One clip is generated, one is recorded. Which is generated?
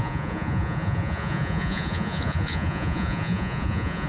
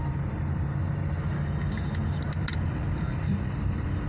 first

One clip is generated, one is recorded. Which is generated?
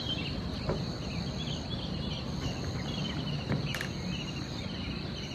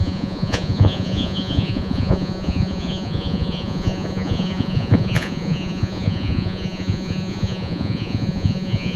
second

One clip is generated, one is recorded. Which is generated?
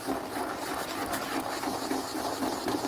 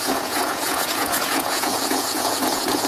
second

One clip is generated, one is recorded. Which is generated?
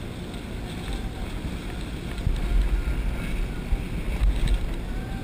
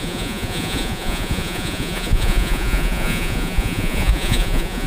second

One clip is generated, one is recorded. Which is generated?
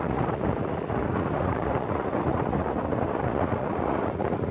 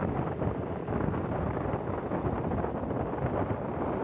first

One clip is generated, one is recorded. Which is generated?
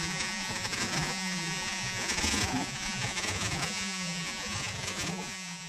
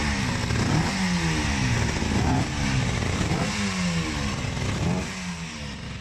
first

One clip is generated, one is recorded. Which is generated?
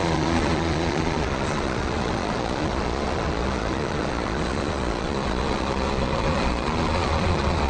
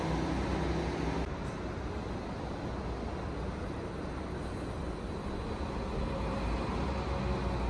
first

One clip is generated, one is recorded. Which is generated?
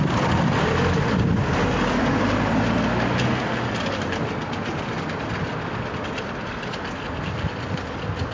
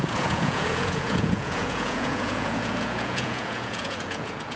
second